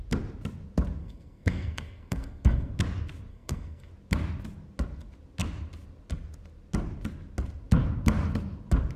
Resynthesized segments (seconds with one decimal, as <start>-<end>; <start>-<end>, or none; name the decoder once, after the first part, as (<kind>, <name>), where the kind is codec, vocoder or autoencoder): 1.0-2.7 (codec, SNAC); 3.3-3.9